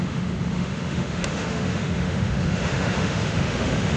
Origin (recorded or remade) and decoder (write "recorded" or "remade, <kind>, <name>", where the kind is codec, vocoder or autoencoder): remade, autoencoder, DAC-VAE